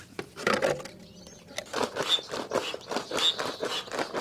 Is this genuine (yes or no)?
yes